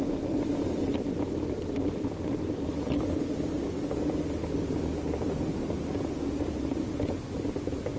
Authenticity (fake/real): real